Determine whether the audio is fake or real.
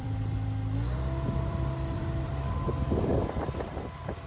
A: fake